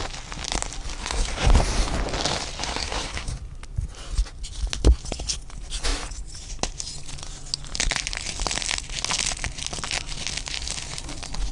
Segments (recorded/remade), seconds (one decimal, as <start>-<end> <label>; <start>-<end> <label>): 0.0-1.0 recorded; 1.0-1.5 remade; 1.5-2.6 recorded; 2.6-3.3 remade; 3.3-11.5 recorded